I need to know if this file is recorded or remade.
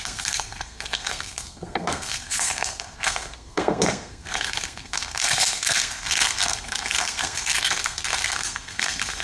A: remade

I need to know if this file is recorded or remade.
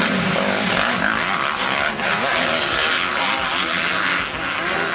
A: recorded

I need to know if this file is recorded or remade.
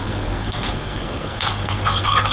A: remade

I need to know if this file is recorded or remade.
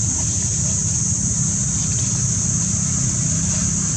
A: recorded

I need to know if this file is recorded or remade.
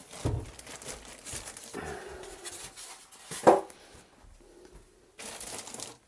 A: recorded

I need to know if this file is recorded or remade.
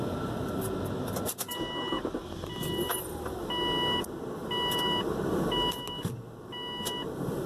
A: recorded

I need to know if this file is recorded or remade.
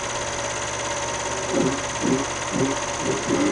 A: recorded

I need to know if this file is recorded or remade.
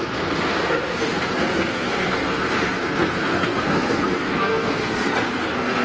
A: remade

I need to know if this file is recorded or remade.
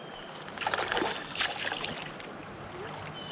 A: recorded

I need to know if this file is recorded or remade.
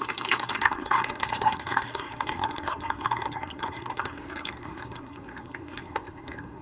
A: remade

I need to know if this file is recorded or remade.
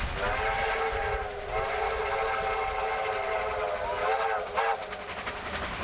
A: recorded